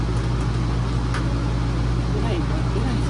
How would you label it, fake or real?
real